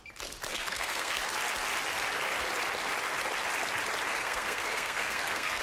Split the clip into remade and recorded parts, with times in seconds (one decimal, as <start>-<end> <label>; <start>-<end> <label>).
0.0-0.5 recorded; 0.5-1.2 remade; 1.2-4.1 recorded; 4.1-5.6 remade